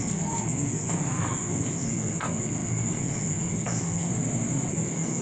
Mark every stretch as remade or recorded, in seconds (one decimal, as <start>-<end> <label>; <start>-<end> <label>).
0.0-4.1 remade; 4.1-4.7 recorded; 4.7-5.2 remade